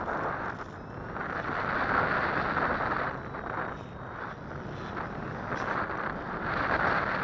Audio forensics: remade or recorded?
recorded